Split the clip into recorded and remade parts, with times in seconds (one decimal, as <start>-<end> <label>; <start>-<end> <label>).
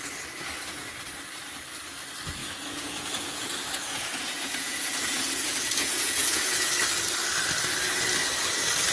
0.0-2.4 recorded; 2.4-6.7 remade; 6.7-8.9 recorded